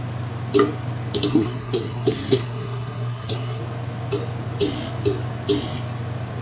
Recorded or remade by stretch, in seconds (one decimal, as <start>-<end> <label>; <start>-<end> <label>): 0.0-1.3 recorded; 1.3-3.6 remade; 3.6-6.4 recorded